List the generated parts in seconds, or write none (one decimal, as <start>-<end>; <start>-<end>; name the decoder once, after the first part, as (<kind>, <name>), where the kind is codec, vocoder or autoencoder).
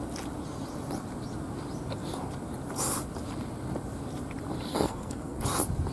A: 4.7-5.4 (codec, SNAC)